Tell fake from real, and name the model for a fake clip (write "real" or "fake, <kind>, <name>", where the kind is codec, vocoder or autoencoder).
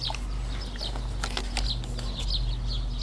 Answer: real